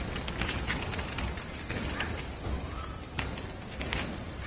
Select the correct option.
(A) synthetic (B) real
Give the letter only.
B